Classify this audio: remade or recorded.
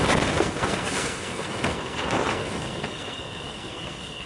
remade